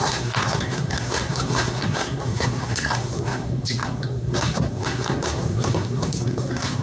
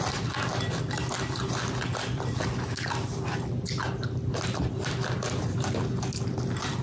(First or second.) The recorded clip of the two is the second